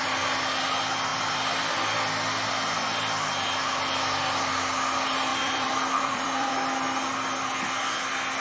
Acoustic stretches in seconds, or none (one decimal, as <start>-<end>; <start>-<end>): 0.0-1.1; 1.7-5.3; 6.5-8.4

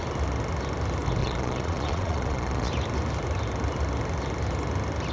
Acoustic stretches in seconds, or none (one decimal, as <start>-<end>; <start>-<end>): 0.0-1.2; 2.7-5.1

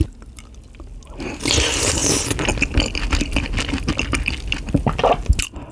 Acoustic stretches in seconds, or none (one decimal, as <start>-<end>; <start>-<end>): 0.0-5.7

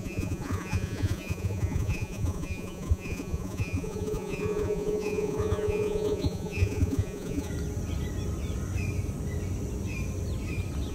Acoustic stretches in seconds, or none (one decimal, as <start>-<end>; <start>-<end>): 7.5-10.9

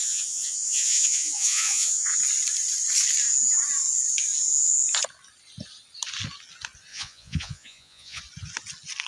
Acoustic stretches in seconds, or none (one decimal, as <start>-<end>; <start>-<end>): 2.2-6.9; 8.2-9.1

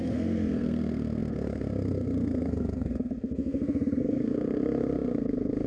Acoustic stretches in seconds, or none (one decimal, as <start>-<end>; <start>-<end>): none